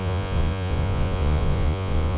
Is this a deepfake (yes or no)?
yes